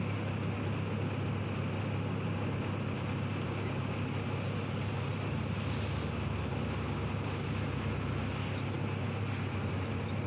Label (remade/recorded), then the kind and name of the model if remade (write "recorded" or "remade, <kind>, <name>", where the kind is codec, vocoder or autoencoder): recorded